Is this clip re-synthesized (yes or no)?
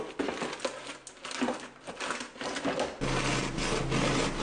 no